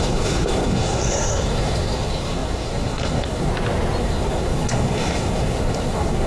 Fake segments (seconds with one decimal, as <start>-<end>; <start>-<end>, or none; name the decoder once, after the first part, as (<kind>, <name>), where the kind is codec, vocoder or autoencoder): 0.0-3.5 (codec, SNAC); 4.0-6.3